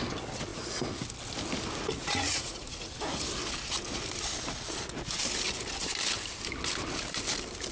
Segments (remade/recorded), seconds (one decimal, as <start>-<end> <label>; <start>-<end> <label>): 0.0-2.0 recorded; 2.0-2.9 remade; 2.9-7.7 recorded